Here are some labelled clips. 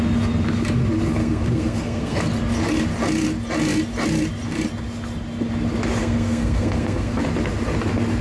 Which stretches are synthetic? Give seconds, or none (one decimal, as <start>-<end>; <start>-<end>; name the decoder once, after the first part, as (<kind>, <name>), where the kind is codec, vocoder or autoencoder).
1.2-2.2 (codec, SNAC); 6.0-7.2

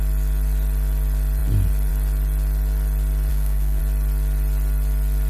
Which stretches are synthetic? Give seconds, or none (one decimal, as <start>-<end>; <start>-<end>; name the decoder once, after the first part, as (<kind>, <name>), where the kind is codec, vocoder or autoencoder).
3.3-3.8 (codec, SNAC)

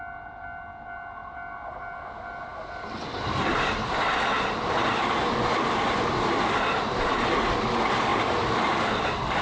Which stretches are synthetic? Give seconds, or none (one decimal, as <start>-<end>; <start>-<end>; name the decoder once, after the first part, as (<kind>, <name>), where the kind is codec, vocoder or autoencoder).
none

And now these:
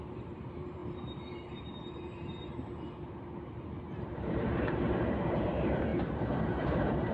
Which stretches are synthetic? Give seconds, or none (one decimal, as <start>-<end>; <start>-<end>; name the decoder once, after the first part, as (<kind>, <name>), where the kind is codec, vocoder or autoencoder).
0.0-7.1 (vocoder, BigVGAN v2)

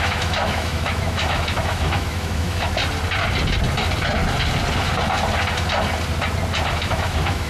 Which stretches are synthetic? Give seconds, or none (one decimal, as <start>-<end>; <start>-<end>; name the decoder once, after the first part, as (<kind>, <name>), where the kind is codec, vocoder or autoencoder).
0.0-2.8 (autoencoder, DAC-VAE); 6.7-7.5

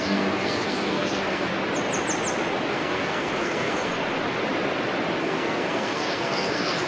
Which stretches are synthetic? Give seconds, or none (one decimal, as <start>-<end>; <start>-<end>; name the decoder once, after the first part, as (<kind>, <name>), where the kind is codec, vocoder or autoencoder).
0.0-1.5 (codec, SNAC); 2.7-3.9; 5.2-6.9

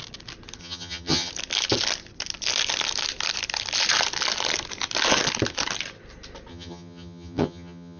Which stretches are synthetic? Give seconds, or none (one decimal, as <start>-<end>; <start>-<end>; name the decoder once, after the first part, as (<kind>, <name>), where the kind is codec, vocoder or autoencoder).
0.6-1.3 (vocoder, HiFi-GAN); 6.5-8.0

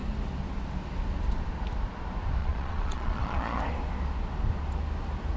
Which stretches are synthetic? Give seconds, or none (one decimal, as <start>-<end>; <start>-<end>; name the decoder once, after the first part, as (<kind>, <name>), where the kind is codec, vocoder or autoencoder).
2.4-3.6 (vocoder, Vocos)